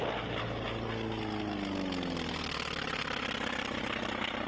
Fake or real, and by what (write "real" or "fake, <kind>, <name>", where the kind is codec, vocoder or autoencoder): real